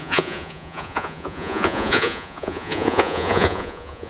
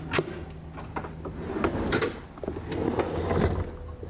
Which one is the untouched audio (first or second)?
second